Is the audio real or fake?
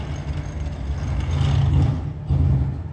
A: real